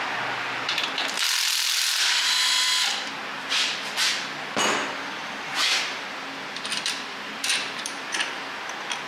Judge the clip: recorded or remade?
recorded